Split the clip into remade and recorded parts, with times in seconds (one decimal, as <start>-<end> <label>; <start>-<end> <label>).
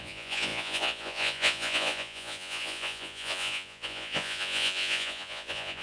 0.0-5.8 remade